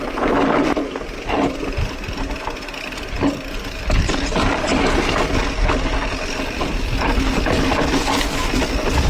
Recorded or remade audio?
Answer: recorded